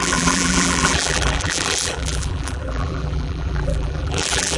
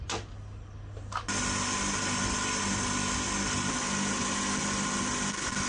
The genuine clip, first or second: second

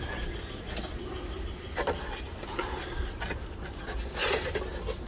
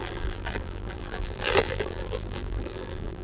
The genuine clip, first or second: first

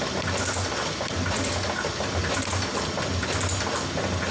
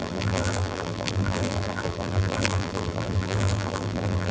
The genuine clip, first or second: first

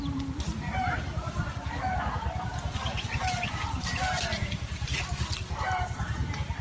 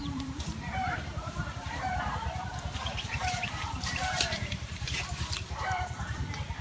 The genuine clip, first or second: first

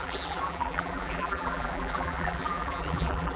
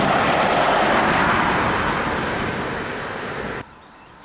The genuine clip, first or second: second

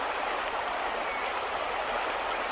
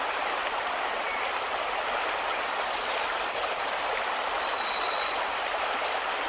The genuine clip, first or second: first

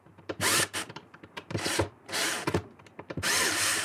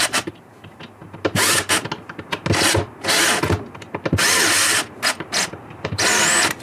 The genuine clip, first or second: second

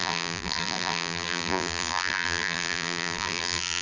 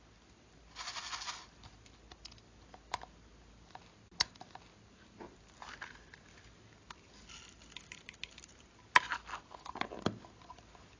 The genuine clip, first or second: second